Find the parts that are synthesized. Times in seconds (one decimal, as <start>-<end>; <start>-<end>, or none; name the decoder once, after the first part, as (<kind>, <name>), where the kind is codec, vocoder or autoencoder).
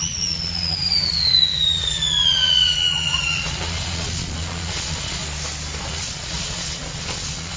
0.0-5.2 (vocoder, Vocos); 5.8-7.6